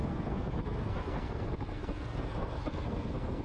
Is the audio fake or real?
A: fake